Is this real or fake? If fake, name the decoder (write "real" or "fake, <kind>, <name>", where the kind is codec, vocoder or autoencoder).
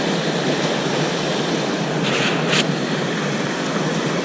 fake, vocoder, BigVGAN v2